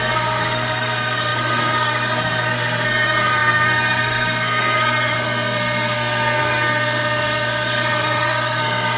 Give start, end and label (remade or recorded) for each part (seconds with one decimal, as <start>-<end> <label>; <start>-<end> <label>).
0.0-9.0 remade